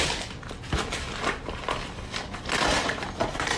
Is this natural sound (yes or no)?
no